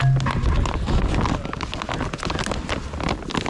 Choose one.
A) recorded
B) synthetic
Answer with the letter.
A